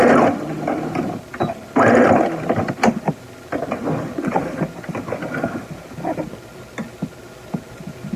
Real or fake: real